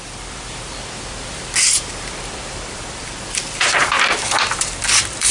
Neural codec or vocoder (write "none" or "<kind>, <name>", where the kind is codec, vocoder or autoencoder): vocoder, BigVGAN v2